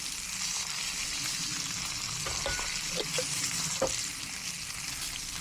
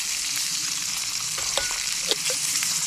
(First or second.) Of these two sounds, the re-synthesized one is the second